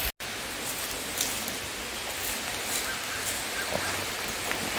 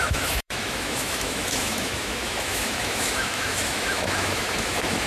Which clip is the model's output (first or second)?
second